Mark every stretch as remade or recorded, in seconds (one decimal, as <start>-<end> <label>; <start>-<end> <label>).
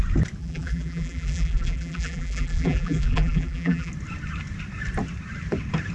0.0-0.4 recorded; 0.4-3.9 remade; 3.9-5.9 recorded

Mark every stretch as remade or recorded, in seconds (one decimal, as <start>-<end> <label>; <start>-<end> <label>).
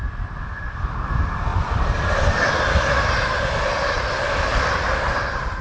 0.0-1.5 recorded; 1.5-2.5 remade; 2.5-4.5 recorded; 4.5-5.6 remade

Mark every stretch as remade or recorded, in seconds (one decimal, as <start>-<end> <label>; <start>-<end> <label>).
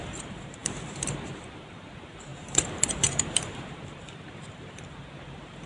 0.0-5.7 remade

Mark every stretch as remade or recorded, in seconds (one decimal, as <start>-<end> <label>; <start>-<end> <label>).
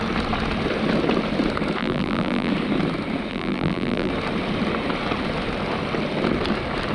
0.0-1.8 recorded; 1.8-2.5 remade; 2.5-3.3 recorded; 3.3-4.1 remade; 4.1-6.9 recorded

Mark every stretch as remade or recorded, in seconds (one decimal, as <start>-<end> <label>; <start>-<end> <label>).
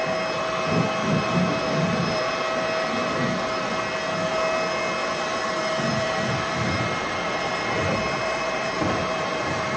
0.0-1.0 recorded; 1.0-2.4 remade; 2.4-3.0 recorded; 3.0-3.7 remade; 3.7-5.0 recorded; 5.0-9.8 remade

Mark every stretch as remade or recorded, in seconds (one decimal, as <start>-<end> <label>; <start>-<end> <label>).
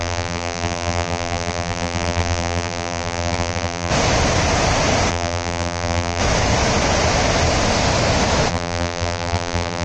0.0-3.9 remade; 3.9-5.1 recorded; 5.1-6.2 remade; 6.2-8.5 recorded; 8.5-9.8 remade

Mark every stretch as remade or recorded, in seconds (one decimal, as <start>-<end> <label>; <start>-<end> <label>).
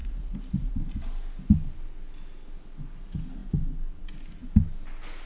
0.0-0.7 remade; 0.7-5.3 recorded